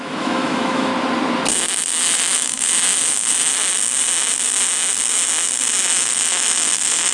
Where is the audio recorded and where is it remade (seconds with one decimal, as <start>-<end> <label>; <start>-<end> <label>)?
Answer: 0.0-0.9 remade; 0.9-2.0 recorded; 2.0-3.5 remade; 3.5-5.9 recorded; 5.9-7.1 remade